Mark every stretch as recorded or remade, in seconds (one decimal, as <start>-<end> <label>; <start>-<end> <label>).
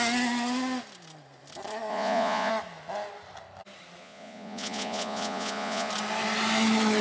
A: 0.0-1.9 recorded; 1.9-2.5 remade; 2.5-4.0 recorded; 4.0-5.9 remade; 5.9-7.0 recorded